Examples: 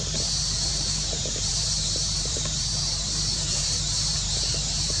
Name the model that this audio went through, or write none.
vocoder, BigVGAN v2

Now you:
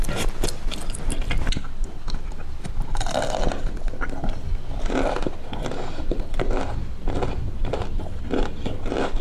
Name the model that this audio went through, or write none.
none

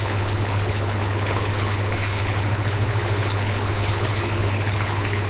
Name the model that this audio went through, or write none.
codec, HILCodec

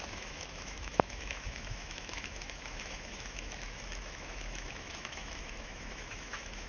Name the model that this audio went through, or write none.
autoencoder, DAC-VAE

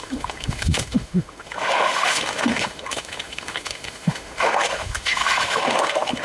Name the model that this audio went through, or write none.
autoencoder, DAC-VAE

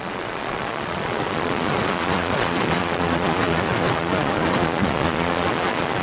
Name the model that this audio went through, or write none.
vocoder, Vocos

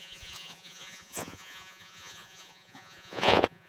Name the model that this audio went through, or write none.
vocoder, Vocos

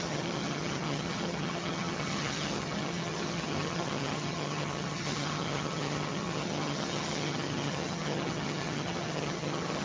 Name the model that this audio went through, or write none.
vocoder, HiFi-GAN